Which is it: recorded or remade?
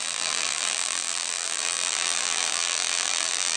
remade